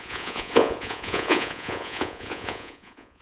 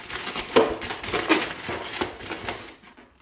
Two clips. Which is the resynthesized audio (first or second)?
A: first